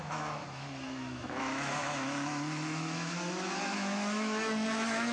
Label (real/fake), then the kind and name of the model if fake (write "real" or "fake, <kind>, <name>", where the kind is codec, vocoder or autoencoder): fake, autoencoder, DAC-VAE